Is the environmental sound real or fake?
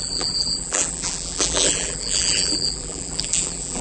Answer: fake